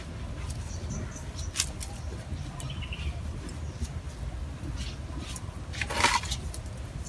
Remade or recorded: recorded